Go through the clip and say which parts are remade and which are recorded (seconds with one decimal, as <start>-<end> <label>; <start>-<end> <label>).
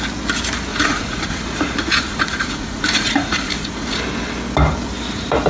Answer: 0.0-0.7 recorded; 0.7-4.0 remade; 4.0-5.5 recorded